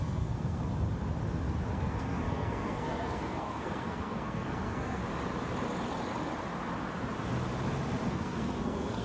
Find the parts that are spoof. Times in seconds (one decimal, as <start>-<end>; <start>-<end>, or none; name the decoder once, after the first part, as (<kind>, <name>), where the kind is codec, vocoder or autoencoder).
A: 0.0-0.7 (codec, SNAC); 1.7-5.0; 8.1-9.0